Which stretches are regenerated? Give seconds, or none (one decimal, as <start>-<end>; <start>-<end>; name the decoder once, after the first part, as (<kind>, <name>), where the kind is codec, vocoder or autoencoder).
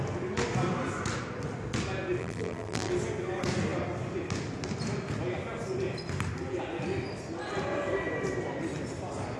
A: 2.2-2.9 (vocoder, BigVGAN v2)